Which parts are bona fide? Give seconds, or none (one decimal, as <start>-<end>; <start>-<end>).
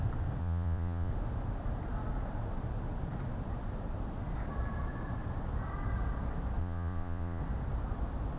0.0-0.4; 1.1-6.6; 7.4-8.4